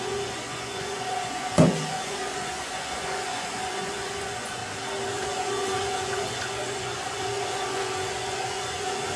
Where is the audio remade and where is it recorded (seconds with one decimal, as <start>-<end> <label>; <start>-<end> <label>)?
0.0-4.6 remade; 4.6-5.1 recorded; 5.1-9.2 remade

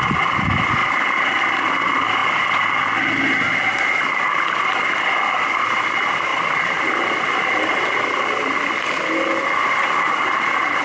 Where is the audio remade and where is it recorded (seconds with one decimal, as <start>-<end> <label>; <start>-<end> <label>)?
0.0-10.8 recorded

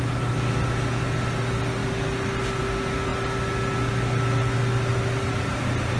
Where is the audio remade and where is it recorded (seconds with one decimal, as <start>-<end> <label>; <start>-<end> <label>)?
0.0-6.0 recorded

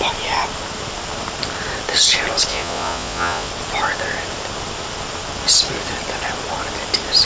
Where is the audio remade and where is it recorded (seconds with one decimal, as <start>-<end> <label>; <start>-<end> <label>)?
0.0-2.5 recorded; 2.5-3.5 remade; 3.5-7.2 recorded

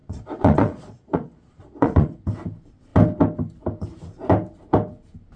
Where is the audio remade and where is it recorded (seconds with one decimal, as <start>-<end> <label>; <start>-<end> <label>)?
0.0-2.2 remade; 2.2-5.4 recorded

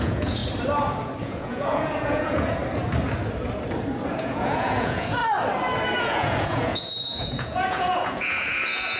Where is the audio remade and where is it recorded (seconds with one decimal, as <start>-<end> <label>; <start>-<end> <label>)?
0.0-0.4 remade; 0.4-1.2 recorded; 1.2-2.6 remade; 2.6-4.2 recorded; 4.2-5.2 remade; 5.2-6.0 recorded; 6.0-9.0 remade

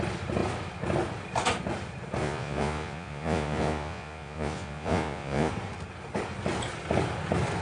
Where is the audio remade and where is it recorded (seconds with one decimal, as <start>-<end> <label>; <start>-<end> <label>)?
0.0-2.2 recorded; 2.2-5.5 remade; 5.5-7.6 recorded